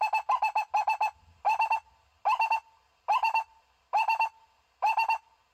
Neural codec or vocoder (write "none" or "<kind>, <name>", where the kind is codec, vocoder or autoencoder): none